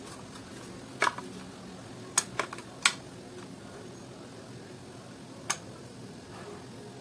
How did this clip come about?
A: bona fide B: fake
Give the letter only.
A